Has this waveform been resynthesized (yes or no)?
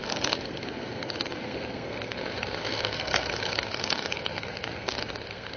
yes